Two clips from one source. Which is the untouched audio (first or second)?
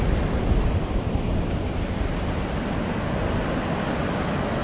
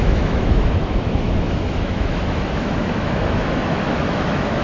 first